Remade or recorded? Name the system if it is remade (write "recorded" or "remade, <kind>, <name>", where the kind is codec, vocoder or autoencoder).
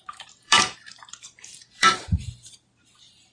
remade, vocoder, BigVGAN v2